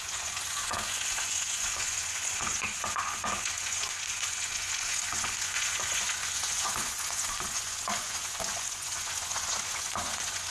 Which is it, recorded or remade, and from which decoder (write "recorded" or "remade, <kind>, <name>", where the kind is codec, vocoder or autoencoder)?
remade, vocoder, Vocos